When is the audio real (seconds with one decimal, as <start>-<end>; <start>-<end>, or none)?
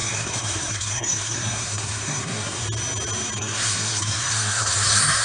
2.6-3.4